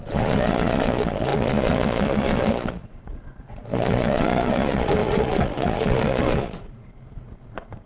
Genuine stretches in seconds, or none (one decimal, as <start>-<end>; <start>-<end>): none